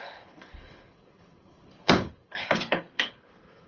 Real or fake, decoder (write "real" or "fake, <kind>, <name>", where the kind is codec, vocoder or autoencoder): fake, codec, HILCodec